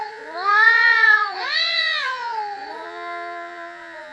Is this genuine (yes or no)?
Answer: no